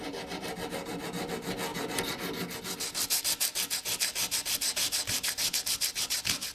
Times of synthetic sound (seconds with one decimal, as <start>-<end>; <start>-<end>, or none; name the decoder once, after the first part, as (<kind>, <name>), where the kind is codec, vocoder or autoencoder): none